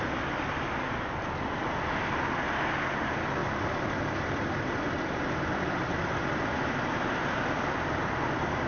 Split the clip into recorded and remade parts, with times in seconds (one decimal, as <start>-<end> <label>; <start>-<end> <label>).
0.0-3.4 recorded; 3.4-8.1 remade; 8.1-8.7 recorded

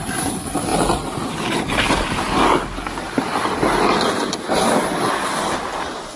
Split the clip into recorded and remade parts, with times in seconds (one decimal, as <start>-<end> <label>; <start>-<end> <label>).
0.0-6.2 recorded